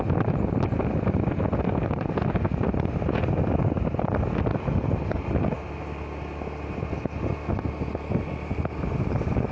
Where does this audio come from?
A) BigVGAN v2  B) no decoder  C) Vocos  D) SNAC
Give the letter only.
B